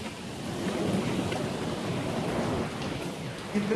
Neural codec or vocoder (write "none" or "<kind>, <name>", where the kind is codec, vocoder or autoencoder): none